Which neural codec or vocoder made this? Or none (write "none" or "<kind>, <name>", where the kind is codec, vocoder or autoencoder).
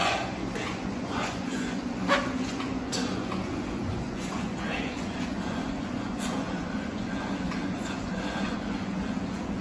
vocoder, Vocos